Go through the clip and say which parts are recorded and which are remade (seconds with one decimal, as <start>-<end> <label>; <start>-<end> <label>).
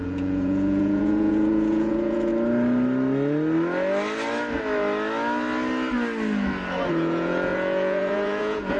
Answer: 0.0-2.3 remade; 2.3-6.9 recorded; 6.9-8.8 remade